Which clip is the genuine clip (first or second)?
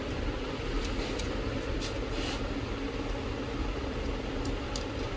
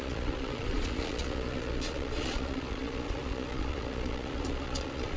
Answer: first